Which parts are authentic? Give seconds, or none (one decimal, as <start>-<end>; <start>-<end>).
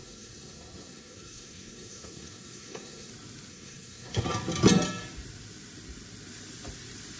3.1-3.5; 4.2-7.2